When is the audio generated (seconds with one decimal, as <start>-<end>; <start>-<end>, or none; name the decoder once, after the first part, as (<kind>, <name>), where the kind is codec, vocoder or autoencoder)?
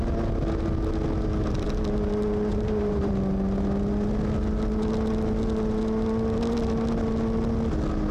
2.5-3.1 (vocoder, BigVGAN v2)